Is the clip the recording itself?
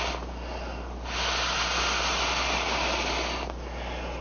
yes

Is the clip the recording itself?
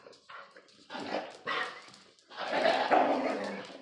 yes